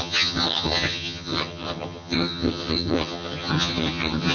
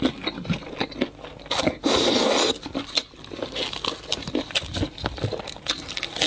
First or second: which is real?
second